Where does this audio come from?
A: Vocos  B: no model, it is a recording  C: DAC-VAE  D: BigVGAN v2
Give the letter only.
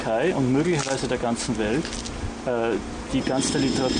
B